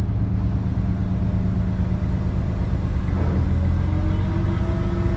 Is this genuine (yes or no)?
yes